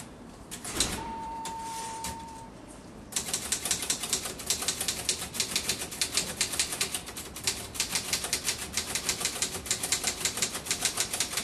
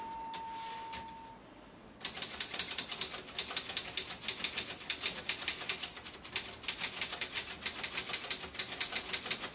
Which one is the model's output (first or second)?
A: first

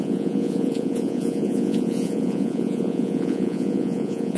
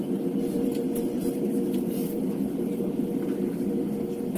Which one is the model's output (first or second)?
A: first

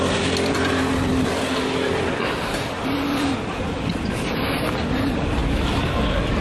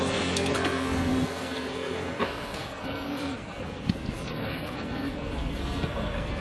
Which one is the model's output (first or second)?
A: second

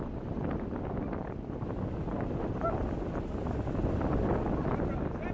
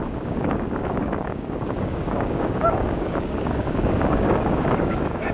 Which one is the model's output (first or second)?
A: second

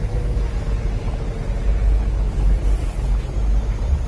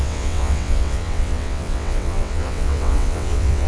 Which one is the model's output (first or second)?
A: second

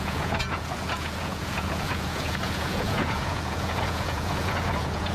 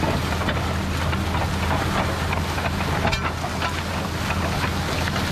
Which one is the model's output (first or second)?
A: first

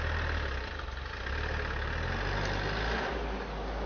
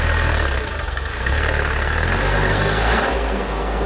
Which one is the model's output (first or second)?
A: second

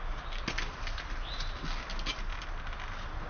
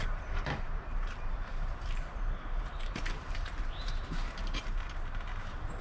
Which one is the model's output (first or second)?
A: second